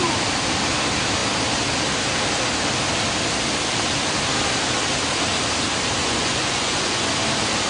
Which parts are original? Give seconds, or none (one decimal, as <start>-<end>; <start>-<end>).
0.0-6.0; 7.1-7.7

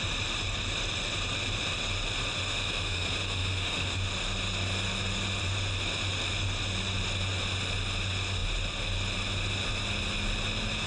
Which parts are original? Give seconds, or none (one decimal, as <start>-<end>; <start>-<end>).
0.0-2.4; 4.1-10.9